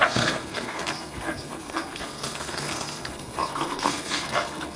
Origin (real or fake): fake